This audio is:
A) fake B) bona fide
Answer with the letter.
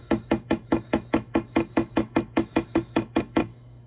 A